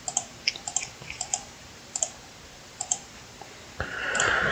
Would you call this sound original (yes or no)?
no